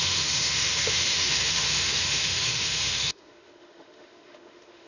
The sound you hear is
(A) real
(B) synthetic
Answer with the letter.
B